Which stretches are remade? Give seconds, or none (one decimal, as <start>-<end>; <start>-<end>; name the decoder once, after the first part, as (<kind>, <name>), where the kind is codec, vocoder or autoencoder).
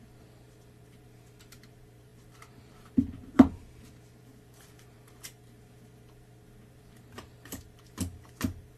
0.0-8.8 (vocoder, BigVGAN v2)